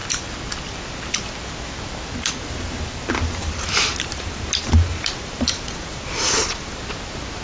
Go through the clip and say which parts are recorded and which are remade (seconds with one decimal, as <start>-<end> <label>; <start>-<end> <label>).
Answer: 0.0-3.4 recorded; 3.4-6.8 remade; 6.8-7.4 recorded